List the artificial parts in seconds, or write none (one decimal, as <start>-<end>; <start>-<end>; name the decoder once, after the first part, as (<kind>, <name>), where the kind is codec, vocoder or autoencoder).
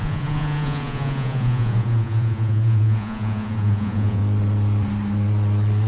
0.0-4.2 (vocoder, Vocos)